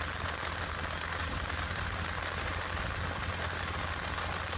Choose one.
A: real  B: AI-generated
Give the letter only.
A